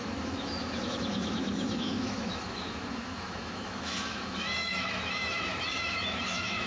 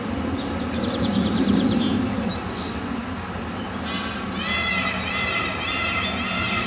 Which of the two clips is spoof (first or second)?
first